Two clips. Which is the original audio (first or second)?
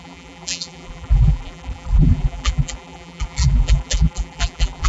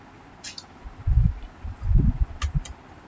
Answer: second